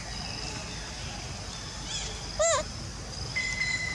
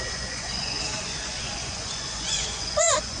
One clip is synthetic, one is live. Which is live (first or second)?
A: first